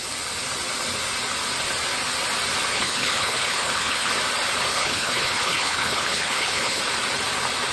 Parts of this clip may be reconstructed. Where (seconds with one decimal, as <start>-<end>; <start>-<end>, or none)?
2.7-4.1; 4.7-6.8